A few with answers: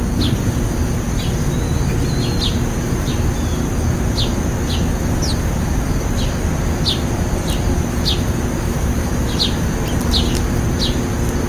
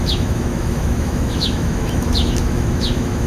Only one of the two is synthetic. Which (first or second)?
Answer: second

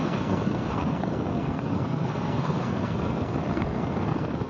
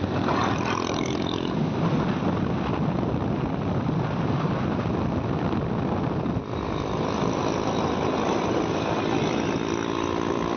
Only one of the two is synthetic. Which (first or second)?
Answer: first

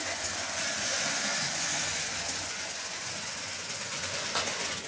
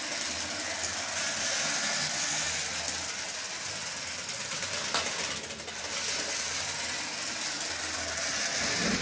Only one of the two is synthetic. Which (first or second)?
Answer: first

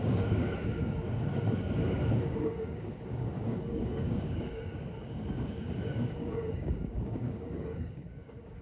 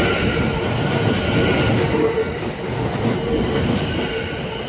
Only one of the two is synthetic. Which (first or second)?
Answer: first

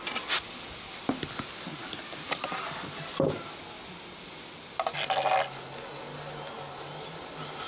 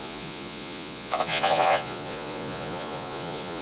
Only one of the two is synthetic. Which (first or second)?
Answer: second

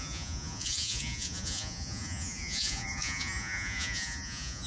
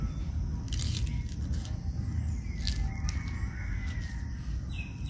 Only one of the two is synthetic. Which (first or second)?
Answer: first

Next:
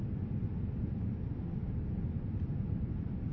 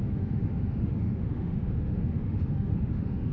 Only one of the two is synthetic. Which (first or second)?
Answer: second